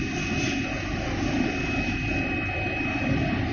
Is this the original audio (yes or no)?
no